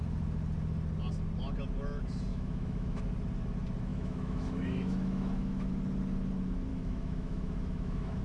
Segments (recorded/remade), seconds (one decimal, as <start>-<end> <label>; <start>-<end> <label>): 0.0-2.3 recorded; 2.3-3.0 remade; 3.0-3.9 recorded; 3.9-5.7 remade; 5.7-6.7 recorded; 6.7-8.2 remade